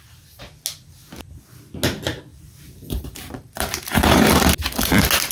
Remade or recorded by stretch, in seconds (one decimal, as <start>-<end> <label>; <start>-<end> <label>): 0.0-2.3 recorded; 2.3-4.3 remade; 4.3-5.3 recorded